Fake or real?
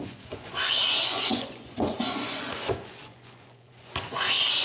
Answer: fake